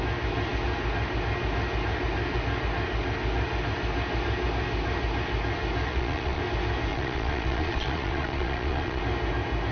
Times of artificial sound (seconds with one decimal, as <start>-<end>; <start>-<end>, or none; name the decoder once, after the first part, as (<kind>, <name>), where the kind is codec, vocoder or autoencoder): 5.9-6.4 (vocoder, Vocos); 6.9-9.0